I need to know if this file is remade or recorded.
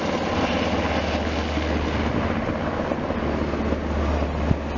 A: recorded